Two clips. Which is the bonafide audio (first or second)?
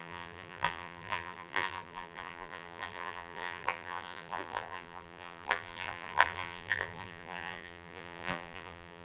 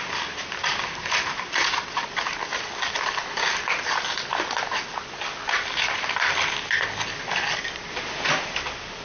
second